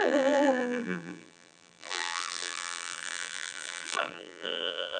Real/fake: fake